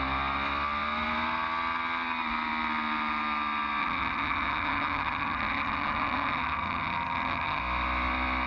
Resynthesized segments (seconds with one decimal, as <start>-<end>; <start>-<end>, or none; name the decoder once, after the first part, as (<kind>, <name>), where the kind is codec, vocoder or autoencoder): 3.8-7.6 (vocoder, HiFi-GAN)